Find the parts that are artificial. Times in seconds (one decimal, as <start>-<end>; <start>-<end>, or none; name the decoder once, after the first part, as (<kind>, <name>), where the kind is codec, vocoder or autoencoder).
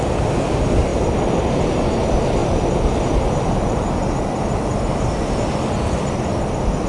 none